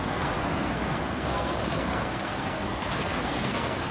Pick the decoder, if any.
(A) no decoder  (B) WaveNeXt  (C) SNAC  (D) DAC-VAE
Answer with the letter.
C